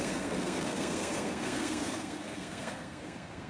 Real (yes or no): no